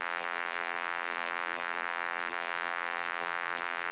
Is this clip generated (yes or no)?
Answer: yes